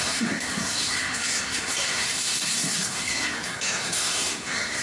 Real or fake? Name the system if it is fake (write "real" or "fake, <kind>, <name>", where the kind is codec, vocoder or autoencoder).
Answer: fake, codec, SNAC